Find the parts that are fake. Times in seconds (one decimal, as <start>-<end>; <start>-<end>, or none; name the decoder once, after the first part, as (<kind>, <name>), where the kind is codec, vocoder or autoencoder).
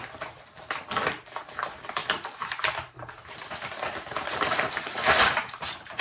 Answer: 2.0-5.6 (vocoder, BigVGAN v2)